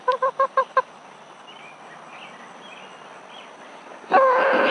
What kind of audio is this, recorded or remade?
recorded